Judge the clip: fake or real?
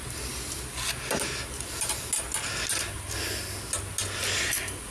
real